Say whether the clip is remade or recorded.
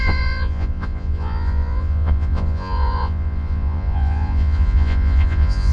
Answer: remade